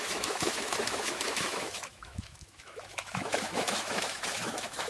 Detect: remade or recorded remade